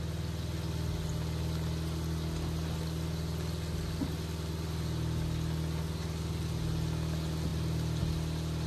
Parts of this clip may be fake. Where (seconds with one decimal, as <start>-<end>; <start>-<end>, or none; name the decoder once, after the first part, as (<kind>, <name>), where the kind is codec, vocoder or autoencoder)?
none